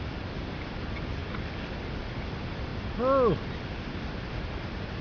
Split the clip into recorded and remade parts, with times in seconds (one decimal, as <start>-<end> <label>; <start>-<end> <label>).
0.0-5.0 recorded